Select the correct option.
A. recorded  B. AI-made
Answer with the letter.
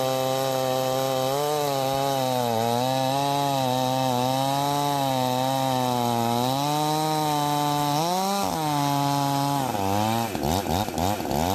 A